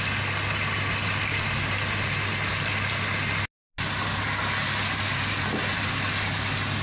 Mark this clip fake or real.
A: real